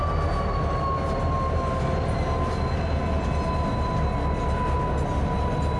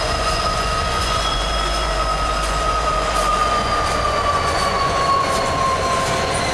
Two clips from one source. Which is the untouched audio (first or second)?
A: first